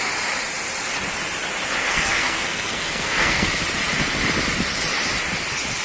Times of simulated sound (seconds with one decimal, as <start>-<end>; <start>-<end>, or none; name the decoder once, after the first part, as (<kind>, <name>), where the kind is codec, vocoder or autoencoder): 1.8-3.6 (codec, SNAC)